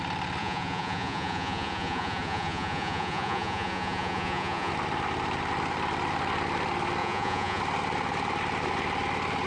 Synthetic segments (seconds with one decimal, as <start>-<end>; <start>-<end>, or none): 0.4-4.7; 7.0-7.6